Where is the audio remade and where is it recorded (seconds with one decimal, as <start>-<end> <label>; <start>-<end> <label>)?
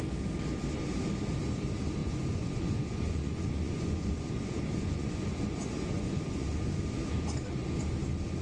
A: 0.0-2.0 recorded; 2.0-6.8 remade; 6.8-8.4 recorded